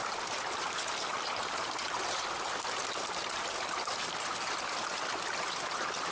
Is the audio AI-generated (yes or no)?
no